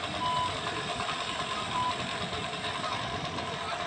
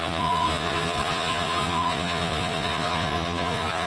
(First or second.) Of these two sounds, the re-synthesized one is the second